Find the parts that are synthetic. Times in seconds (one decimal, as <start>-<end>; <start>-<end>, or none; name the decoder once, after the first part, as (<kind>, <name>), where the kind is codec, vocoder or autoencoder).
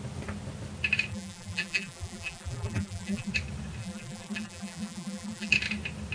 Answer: 1.1-3.3 (vocoder, BigVGAN v2); 3.8-5.5